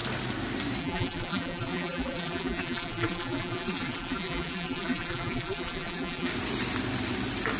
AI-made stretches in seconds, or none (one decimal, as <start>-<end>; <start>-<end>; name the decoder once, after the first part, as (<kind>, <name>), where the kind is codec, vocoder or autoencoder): 0.8-6.3 (vocoder, BigVGAN v2)